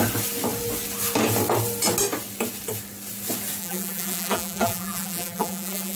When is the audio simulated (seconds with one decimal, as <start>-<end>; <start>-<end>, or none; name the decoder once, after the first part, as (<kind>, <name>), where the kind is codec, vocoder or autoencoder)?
3.6-6.0 (vocoder, BigVGAN v2)

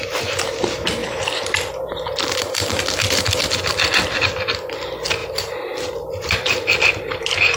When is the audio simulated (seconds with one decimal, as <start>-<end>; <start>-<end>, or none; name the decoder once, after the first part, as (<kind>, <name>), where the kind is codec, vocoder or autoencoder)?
1.0-2.8 (vocoder, BigVGAN v2); 5.2-7.6

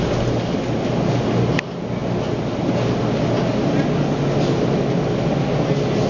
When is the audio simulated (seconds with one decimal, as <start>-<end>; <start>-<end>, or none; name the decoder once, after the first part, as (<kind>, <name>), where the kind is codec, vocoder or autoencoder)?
none

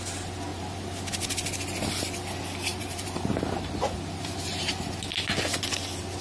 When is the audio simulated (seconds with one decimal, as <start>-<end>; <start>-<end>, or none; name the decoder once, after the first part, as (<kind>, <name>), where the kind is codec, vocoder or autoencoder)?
0.5-1.1 (vocoder, BigVGAN v2); 2.7-5.1

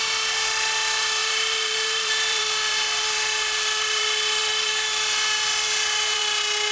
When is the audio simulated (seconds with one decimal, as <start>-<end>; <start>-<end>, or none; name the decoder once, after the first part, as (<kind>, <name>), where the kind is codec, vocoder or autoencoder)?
1.2-4.0 (vocoder, BigVGAN v2); 4.4-6.2